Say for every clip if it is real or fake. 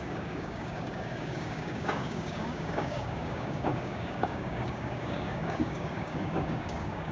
fake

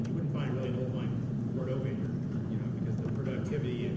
real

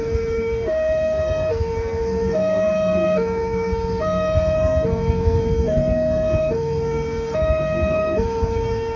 fake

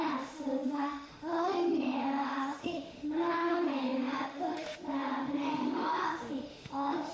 fake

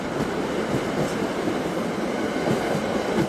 real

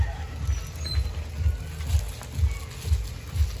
real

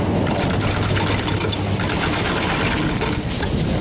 real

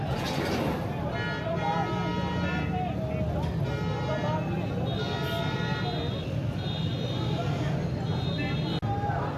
real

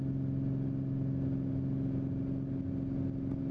real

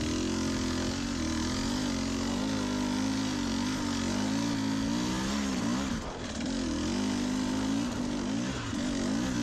real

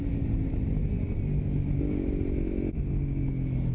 real